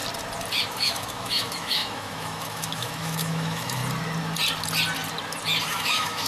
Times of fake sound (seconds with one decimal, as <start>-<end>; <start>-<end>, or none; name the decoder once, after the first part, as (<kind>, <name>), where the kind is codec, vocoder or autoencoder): 0.7-3.8 (autoencoder, DAC-VAE); 5.7-6.3